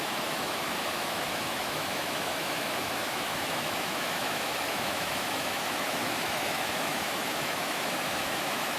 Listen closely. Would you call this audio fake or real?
fake